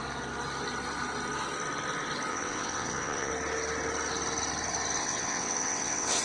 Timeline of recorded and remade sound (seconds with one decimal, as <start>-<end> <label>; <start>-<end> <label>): 0.0-2.3 recorded; 2.3-3.3 remade; 3.3-5.0 recorded; 5.0-6.2 remade